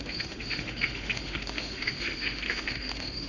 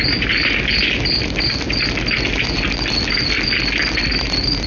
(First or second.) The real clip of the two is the second